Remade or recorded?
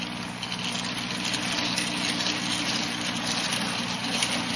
recorded